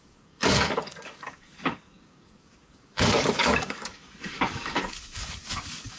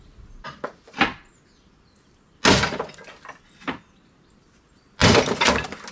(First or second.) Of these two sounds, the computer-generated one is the first